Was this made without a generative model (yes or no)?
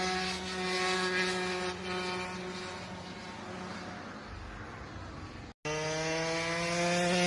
yes